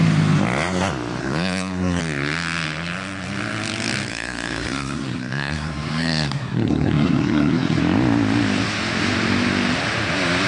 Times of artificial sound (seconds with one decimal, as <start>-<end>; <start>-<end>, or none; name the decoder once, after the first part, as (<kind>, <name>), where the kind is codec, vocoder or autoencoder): 1.2-2.0 (codec, SNAC); 4.1-7.8